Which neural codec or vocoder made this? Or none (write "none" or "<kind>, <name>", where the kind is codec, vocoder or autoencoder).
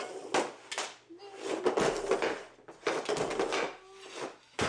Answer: none